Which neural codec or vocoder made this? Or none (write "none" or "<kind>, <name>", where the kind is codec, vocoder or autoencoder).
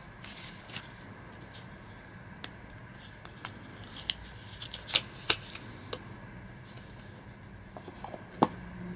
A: none